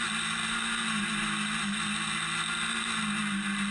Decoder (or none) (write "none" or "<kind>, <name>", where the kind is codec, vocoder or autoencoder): none